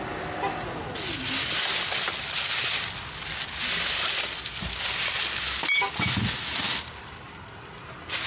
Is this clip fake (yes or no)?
no